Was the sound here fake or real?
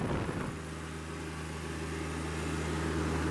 real